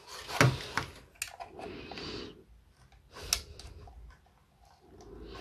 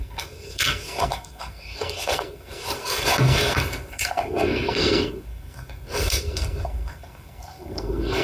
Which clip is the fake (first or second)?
second